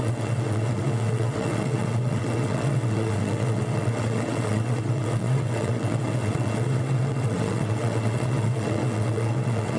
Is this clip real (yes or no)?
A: no